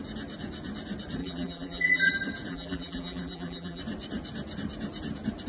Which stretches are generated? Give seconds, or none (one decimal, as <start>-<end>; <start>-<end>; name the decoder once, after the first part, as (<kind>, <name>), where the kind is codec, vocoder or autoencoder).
1.2-2.1 (vocoder, BigVGAN v2); 2.5-3.8